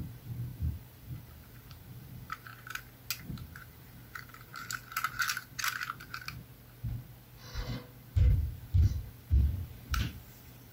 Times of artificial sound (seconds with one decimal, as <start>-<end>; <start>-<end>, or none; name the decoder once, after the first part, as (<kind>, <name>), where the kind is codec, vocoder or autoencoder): 0.0-2.5 (vocoder, BigVGAN v2); 3.2-4.5; 8.3-10.7